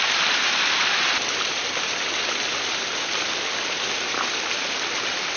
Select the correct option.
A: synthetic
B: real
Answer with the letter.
A